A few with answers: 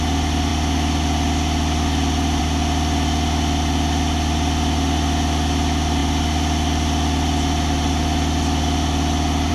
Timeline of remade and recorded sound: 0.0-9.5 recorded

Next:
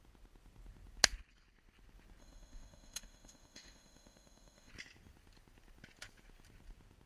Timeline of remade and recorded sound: 0.0-2.2 recorded; 2.2-4.7 remade; 4.7-7.1 recorded

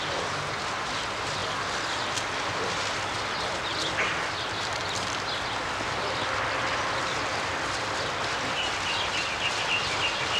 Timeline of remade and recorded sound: 0.0-10.4 recorded

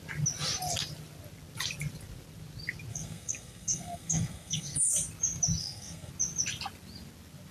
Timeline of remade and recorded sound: 0.0-2.9 recorded; 2.9-4.9 remade; 4.9-5.6 recorded; 5.6-6.1 remade; 6.1-7.5 recorded

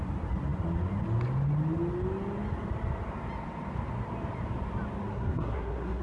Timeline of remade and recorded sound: 0.0-5.1 recorded; 5.1-6.0 remade

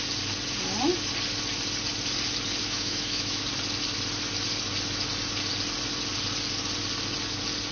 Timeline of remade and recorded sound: 0.0-2.6 recorded; 2.6-3.4 remade; 3.4-7.7 recorded